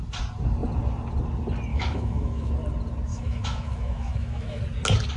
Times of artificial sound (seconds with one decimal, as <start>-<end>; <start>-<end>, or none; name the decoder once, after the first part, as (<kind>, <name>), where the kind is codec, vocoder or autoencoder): 1.7-2.5 (autoencoder, DAC-VAE); 3.1-4.6